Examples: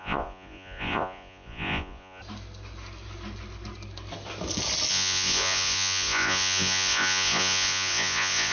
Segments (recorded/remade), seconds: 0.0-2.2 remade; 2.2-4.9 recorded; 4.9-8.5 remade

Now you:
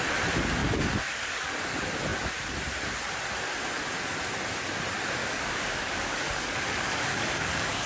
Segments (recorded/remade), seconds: 0.0-0.6 recorded; 0.6-1.5 remade; 1.5-5.2 recorded; 5.2-7.9 remade

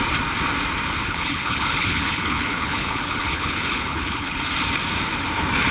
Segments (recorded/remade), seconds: 0.0-1.0 recorded; 1.0-4.4 remade; 4.4-5.7 recorded

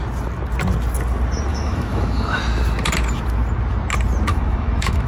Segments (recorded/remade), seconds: 0.0-1.5 recorded; 1.5-2.4 remade; 2.4-4.3 recorded; 4.3-5.1 remade

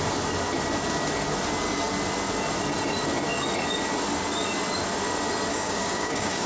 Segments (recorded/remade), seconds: 0.0-5.5 recorded; 5.5-6.5 remade